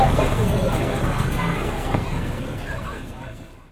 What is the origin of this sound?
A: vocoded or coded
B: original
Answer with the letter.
A